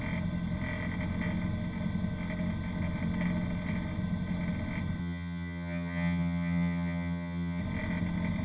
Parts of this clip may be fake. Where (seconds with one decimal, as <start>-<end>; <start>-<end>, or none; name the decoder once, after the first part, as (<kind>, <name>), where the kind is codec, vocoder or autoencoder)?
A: 5.0-7.6 (vocoder, HiFi-GAN)